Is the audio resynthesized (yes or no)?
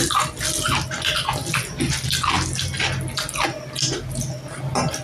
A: no